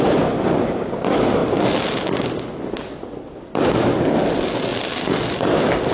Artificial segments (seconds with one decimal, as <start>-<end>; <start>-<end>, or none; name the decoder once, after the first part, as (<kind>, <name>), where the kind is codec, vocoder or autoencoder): none